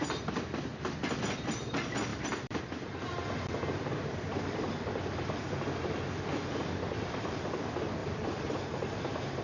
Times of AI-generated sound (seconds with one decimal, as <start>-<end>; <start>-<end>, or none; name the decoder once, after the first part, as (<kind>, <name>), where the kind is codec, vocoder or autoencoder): 2.1-7.4 (vocoder, BigVGAN v2); 8.0-8.6